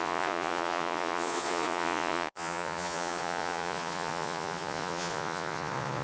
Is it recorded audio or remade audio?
remade